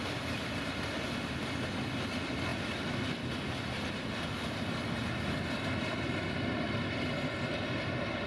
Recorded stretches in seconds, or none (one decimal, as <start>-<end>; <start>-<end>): 0.0-8.3